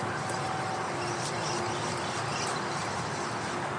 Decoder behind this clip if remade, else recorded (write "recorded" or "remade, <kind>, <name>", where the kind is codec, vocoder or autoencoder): recorded